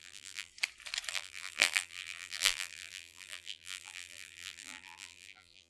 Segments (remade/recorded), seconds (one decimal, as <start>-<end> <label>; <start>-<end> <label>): 0.0-0.5 remade; 0.5-1.1 recorded; 1.1-5.7 remade